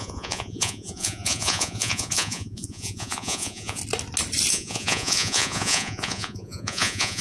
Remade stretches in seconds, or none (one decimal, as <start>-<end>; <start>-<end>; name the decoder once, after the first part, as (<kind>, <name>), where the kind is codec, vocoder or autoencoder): 0.0-3.8 (vocoder, Vocos); 4.5-7.2